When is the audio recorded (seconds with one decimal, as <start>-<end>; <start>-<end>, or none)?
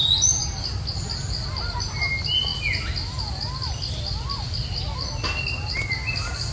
0.0-6.5